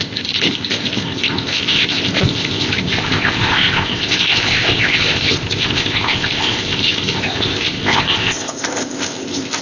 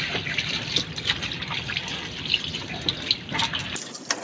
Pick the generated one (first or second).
first